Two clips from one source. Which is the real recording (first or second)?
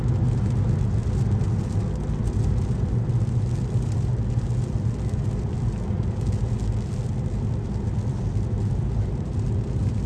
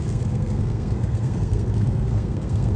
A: first